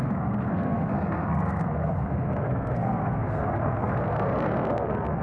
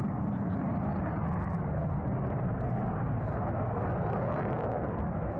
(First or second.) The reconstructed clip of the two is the first